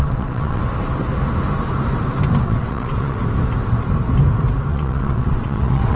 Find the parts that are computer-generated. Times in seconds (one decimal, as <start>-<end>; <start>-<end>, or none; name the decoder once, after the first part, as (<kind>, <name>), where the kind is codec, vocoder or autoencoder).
0.0-0.6 (vocoder, WaveNeXt); 2.4-3.2; 4.7-6.0